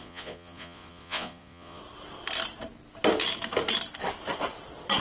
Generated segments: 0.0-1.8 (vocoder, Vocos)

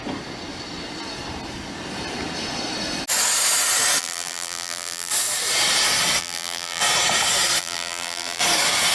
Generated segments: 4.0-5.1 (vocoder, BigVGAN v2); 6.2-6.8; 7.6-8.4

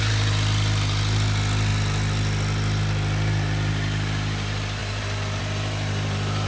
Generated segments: none